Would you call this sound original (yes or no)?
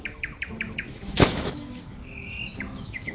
no